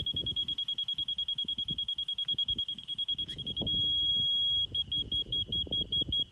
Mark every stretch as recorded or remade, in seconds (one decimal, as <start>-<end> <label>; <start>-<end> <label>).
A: 0.0-4.1 remade; 4.1-4.8 recorded; 4.8-5.3 remade; 5.3-6.3 recorded